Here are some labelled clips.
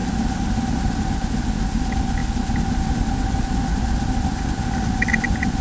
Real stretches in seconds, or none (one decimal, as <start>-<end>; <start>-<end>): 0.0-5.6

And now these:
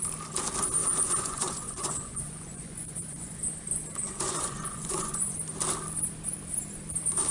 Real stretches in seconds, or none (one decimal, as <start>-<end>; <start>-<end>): 0.0-0.8; 3.4-4.0; 5.3-7.3

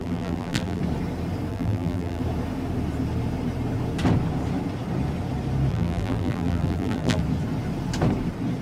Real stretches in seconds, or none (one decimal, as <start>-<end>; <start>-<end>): 0.8-1.5; 2.2-5.7; 7.2-8.6

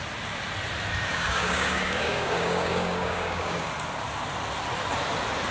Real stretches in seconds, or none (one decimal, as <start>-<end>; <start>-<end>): 0.0-1.1; 3.7-5.5

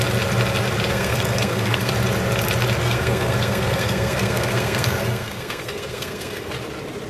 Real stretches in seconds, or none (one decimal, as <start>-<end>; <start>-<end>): 0.0-0.9; 1.9-2.8; 6.5-7.1

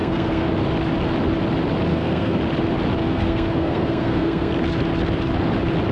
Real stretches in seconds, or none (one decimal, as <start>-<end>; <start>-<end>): 0.5-1.9; 2.4-3.0; 4.5-5.9

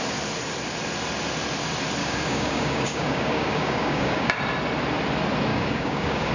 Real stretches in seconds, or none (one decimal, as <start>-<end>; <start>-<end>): 0.0-2.0; 4.4-5.5

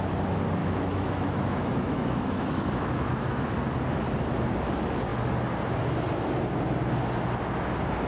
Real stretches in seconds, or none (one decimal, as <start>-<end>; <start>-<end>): 0.0-0.6; 3.5-8.1